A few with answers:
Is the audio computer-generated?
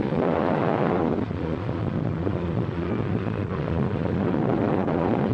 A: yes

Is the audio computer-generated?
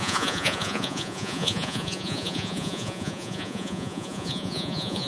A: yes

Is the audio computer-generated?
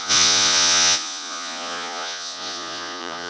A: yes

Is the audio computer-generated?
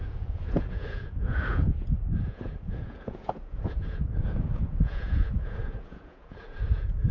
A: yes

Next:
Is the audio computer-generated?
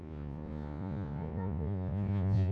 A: yes